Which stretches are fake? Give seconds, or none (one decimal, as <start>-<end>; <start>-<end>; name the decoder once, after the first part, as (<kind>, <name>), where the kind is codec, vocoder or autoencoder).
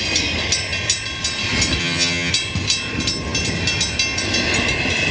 1.8-2.3 (vocoder, HiFi-GAN)